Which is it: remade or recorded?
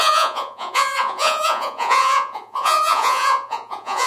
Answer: remade